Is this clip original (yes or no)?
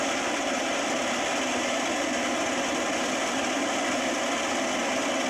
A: yes